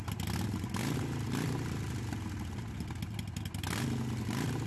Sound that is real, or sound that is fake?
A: real